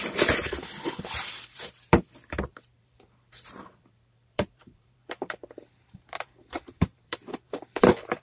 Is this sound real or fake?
fake